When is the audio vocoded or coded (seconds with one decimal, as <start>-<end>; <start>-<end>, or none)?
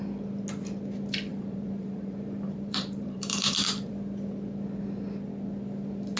1.3-3.9